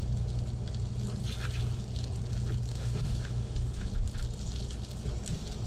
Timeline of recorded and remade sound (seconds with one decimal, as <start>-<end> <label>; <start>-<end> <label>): 0.0-2.7 recorded; 2.7-3.9 remade; 3.9-5.7 recorded